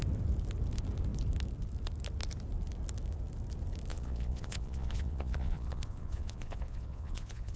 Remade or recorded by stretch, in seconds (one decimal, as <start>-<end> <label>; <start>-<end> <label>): 0.0-3.9 recorded; 3.9-7.6 remade